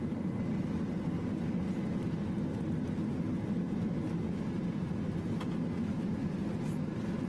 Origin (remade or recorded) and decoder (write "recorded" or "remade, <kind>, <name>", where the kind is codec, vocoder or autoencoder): recorded